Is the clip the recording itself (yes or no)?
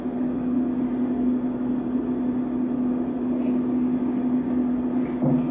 yes